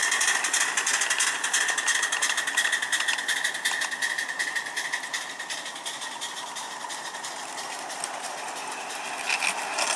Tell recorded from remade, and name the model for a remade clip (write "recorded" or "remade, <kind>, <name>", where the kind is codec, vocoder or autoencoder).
recorded